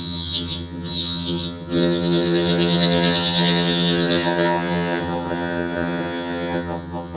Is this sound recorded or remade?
remade